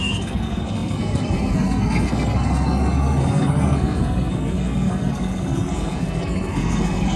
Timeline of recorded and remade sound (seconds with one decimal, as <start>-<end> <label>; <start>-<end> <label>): 0.0-7.2 remade